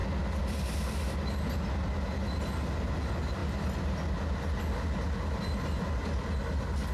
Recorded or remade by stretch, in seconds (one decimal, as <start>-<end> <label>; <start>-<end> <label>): 0.0-6.9 recorded